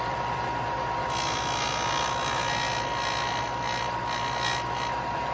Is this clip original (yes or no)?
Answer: yes